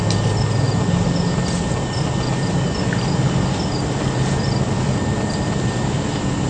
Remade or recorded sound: recorded